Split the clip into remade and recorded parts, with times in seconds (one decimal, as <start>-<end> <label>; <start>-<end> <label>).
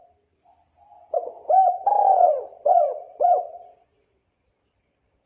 0.0-2.0 recorded; 2.0-5.3 remade